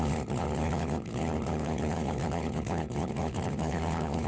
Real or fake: fake